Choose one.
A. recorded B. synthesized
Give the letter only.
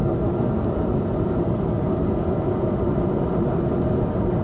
A